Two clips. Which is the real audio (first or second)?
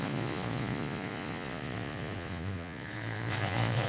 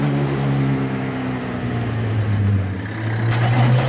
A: second